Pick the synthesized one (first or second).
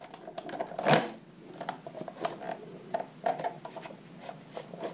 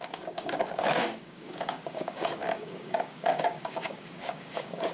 second